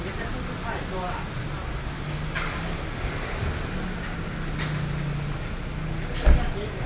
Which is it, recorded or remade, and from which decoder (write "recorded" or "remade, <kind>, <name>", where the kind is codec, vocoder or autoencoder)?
recorded